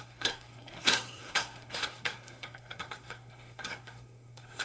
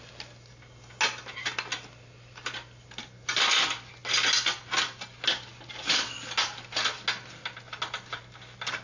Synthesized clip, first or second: first